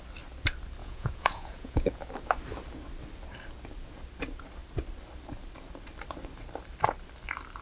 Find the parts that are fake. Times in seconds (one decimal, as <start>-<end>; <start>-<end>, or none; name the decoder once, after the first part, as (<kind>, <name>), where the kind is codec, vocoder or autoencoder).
0.8-2.1 (vocoder, Vocos)